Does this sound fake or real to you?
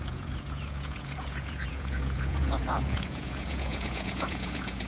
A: fake